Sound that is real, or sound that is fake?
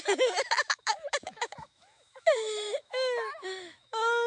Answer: fake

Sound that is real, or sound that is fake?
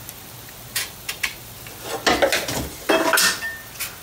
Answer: real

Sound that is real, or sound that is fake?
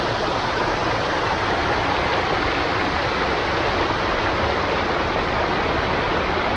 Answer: real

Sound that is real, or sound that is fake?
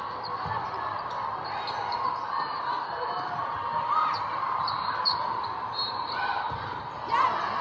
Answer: real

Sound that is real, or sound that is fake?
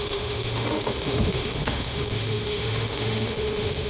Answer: fake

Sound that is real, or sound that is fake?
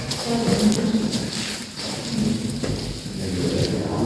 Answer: real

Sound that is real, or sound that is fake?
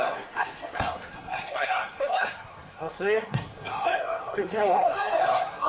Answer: fake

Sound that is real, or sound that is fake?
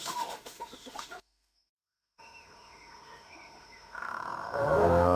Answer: fake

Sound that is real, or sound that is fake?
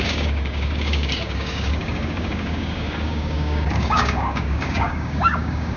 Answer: fake